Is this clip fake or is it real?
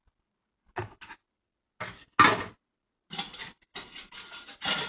real